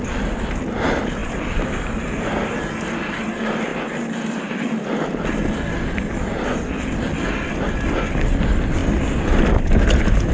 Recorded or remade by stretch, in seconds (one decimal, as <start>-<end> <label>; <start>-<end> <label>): 0.0-10.3 recorded